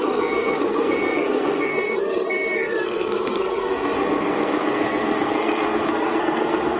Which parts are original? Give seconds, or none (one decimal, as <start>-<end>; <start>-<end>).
none